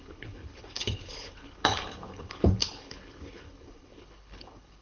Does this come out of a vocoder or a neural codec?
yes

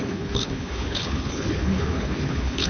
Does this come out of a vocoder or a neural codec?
yes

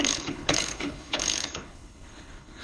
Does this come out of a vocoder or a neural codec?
yes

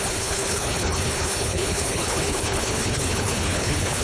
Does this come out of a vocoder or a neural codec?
yes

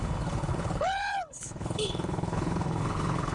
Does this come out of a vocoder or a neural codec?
yes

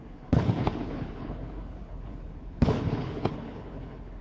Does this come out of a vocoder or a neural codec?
yes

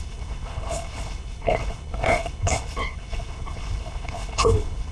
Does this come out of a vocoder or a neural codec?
yes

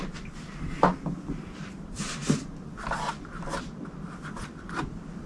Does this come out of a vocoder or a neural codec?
no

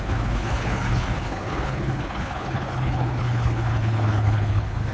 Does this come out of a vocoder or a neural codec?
yes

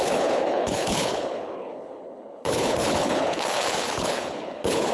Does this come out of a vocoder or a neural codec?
yes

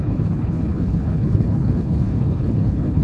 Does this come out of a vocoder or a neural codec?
yes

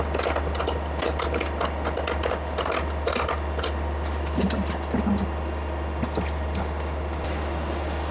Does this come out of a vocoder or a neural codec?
no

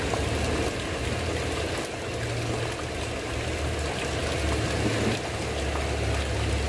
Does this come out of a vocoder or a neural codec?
no